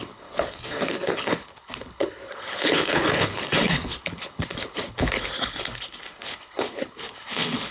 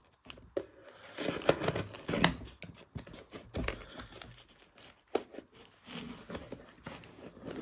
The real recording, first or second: second